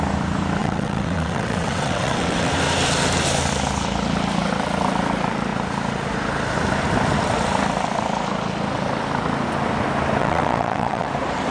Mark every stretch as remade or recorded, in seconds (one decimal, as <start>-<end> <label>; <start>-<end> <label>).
0.0-0.6 recorded; 0.6-2.5 remade; 2.5-10.2 recorded; 10.2-11.1 remade; 11.1-11.5 recorded